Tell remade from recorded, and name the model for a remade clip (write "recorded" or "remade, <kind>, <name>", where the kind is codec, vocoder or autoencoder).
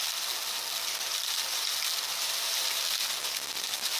recorded